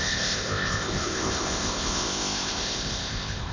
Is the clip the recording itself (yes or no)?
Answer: no